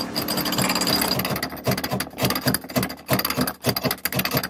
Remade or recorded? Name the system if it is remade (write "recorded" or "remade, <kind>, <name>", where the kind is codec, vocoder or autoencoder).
recorded